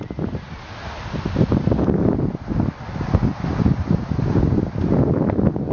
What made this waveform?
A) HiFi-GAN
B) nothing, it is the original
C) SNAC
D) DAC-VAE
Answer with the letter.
B